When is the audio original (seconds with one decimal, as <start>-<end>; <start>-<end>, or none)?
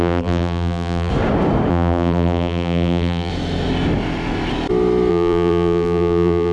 1.1-1.7; 3.3-5.1